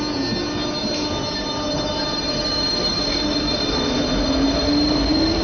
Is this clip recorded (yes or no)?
yes